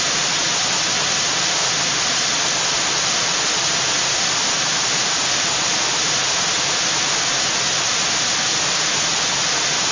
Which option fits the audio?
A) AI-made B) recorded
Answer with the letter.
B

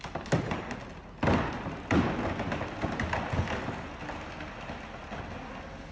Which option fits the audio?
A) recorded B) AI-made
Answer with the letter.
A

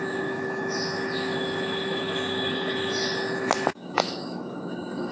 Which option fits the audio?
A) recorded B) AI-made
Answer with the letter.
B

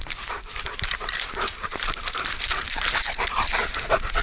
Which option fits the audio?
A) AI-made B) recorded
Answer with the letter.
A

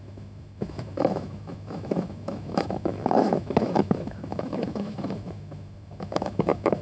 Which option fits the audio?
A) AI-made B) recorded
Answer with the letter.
A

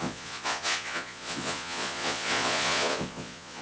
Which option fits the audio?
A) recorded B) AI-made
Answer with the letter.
B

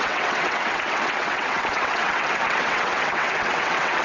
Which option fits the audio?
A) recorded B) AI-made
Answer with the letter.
B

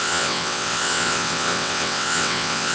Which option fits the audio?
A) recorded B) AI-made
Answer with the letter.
B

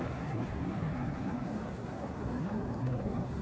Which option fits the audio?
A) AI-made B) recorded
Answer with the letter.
A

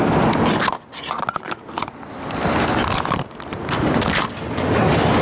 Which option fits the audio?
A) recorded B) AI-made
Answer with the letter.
A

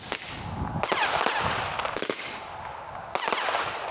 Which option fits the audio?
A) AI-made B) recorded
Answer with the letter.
B